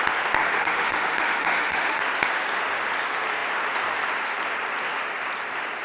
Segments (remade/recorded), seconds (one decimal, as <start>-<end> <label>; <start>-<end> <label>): 0.0-0.4 recorded; 0.4-2.0 remade; 2.0-5.8 recorded